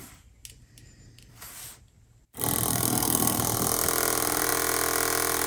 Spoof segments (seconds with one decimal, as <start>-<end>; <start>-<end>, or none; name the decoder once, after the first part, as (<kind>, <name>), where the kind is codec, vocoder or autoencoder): 2.7-3.4 (codec, SNAC)